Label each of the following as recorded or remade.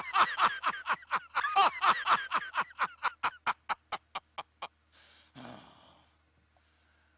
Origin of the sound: recorded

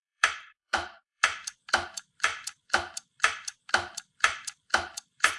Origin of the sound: remade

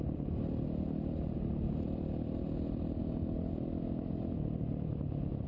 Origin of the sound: recorded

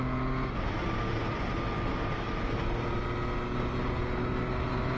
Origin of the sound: recorded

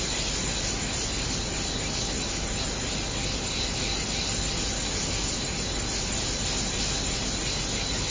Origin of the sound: recorded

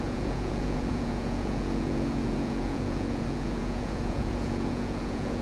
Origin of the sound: remade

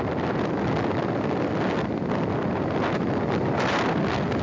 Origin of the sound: recorded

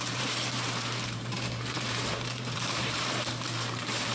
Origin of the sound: remade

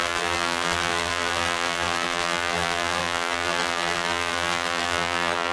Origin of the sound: remade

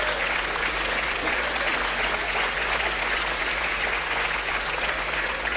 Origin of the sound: remade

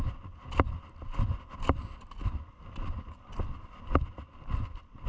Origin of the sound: recorded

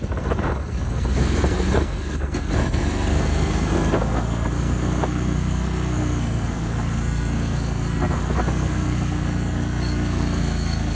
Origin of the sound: remade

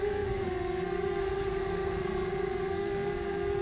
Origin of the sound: remade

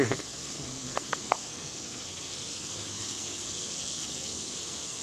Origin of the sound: remade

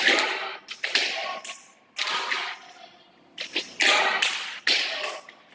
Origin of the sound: recorded